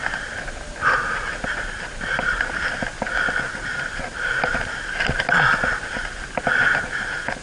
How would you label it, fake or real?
real